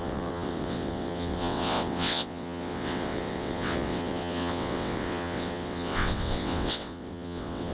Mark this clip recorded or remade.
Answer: remade